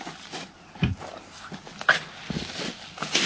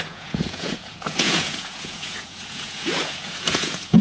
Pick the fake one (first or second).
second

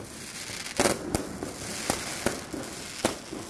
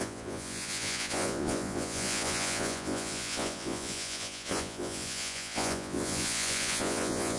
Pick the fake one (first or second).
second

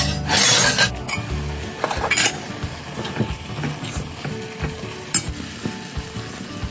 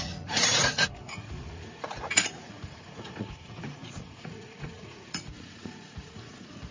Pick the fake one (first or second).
second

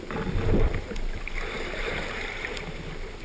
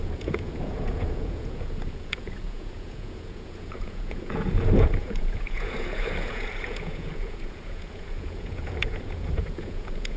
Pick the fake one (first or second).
second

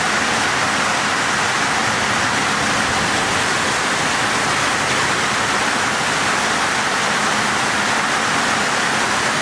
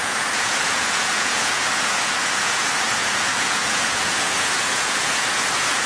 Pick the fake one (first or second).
second